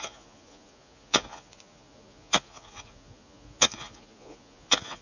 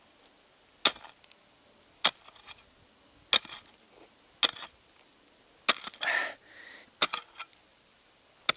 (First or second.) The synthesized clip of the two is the first